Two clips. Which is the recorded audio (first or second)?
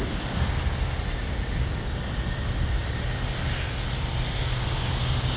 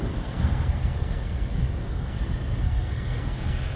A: first